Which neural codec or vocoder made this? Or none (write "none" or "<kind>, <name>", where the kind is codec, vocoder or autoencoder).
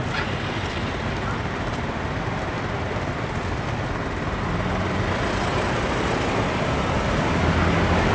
none